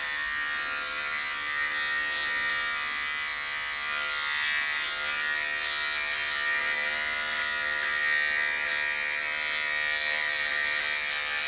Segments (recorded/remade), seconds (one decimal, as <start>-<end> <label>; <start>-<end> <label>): 0.0-11.5 recorded